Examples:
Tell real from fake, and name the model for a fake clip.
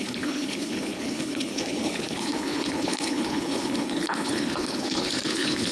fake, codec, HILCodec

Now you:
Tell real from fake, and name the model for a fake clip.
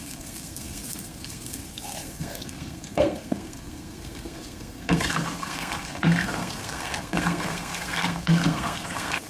fake, codec, SNAC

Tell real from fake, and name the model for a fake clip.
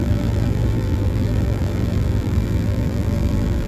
fake, vocoder, BigVGAN v2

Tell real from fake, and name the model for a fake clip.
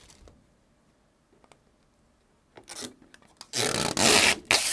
real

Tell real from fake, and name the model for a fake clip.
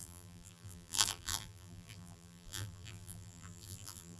fake, vocoder, BigVGAN v2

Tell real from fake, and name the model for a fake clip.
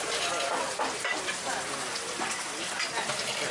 real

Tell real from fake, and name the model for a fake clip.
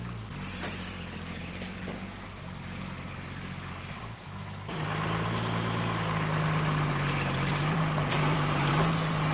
fake, vocoder, BigVGAN v2